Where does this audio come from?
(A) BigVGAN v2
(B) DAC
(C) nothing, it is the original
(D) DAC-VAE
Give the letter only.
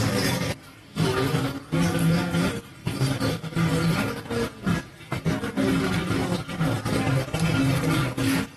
C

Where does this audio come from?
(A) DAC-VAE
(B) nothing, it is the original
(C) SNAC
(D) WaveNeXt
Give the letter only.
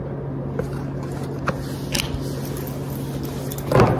B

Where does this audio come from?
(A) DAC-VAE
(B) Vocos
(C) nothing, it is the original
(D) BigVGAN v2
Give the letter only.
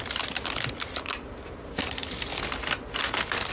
C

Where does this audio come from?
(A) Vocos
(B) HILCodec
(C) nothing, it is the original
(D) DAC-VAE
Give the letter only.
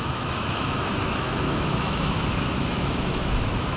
D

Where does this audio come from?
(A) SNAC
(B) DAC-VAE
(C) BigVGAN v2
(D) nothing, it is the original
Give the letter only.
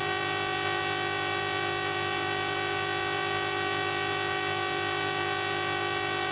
D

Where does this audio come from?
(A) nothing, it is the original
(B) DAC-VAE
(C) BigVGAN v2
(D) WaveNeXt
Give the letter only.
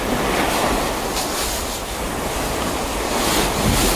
A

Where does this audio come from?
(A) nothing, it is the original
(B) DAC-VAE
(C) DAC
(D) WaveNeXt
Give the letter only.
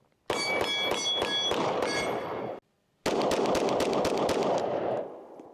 A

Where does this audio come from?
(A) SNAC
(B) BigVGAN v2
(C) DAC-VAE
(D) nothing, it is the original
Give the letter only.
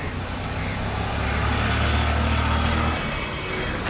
D